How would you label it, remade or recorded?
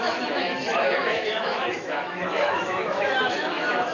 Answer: remade